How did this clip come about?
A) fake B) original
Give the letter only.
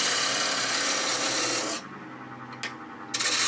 B